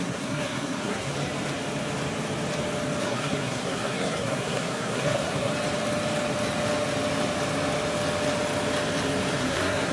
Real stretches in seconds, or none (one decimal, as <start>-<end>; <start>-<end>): 1.1-3.0; 5.5-9.4